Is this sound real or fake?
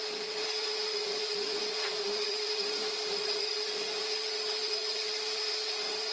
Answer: fake